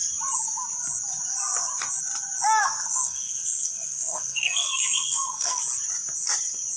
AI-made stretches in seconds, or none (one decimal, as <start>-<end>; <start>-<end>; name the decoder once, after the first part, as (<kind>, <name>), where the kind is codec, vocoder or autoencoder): 2.6-5.6 (codec, SNAC)